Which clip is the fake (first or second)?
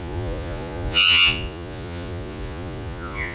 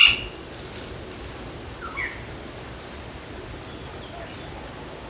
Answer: first